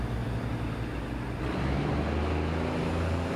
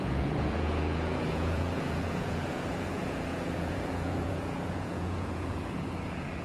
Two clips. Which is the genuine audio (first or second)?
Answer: first